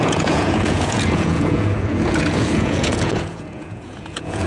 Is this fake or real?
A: fake